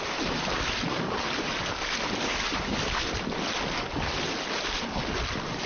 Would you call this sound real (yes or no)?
yes